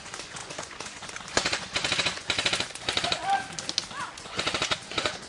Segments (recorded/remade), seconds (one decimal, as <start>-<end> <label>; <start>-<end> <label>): 0.0-3.2 remade; 3.2-4.0 recorded; 4.0-5.3 remade